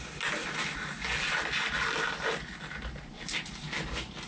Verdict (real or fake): real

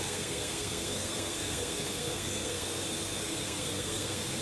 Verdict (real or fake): fake